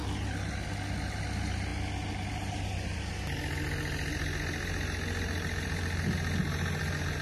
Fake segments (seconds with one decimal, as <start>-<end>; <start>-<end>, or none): 1.2-1.7; 2.3-3.1; 6.8-7.2